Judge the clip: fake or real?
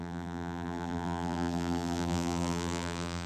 fake